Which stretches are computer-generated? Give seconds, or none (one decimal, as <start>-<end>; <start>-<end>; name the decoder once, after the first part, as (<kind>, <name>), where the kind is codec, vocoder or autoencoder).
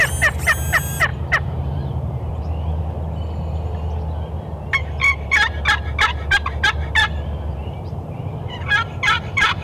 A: 1.1-2.3 (vocoder, BigVGAN v2); 7.6-8.2